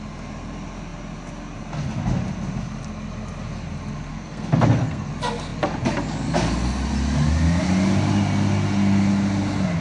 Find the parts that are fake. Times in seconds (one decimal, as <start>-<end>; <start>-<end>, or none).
4.1-5.1

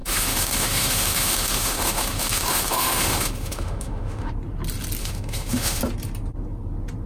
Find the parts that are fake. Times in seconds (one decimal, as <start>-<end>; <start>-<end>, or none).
0.0-4.3; 5.0-5.8

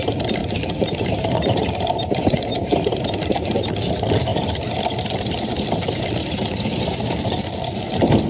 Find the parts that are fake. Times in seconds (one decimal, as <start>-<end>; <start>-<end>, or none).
0.4-3.7

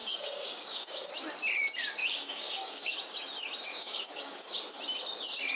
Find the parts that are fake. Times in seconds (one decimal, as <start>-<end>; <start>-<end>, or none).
0.0-1.1; 2.0-2.9; 3.7-4.6